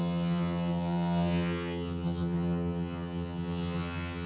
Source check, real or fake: fake